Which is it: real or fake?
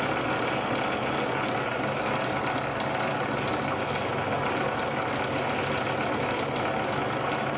real